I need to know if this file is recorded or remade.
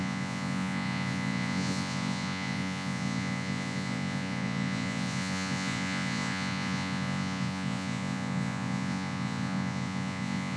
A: remade